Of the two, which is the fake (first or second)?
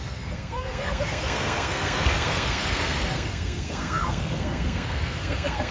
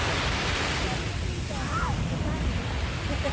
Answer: first